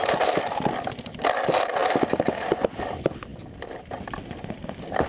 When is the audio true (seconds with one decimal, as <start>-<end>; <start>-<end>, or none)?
0.0-5.1